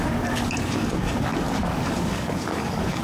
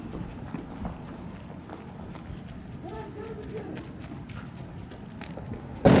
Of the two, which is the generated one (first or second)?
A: first